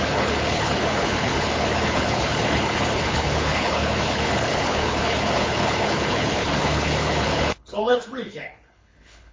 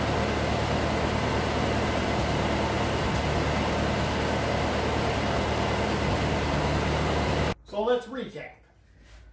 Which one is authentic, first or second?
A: second